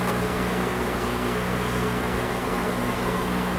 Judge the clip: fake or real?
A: fake